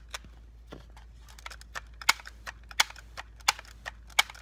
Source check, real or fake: real